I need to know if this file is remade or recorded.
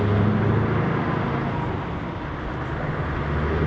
recorded